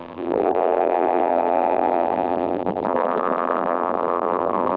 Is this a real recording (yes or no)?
no